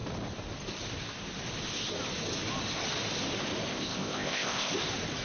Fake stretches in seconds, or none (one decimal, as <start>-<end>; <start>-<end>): 3.7-4.7